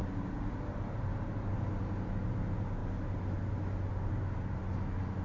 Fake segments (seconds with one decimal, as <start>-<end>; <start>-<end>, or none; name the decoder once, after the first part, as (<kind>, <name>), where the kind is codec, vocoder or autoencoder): none